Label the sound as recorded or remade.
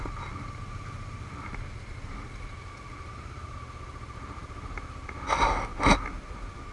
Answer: recorded